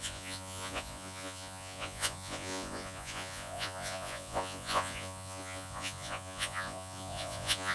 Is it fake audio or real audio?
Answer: fake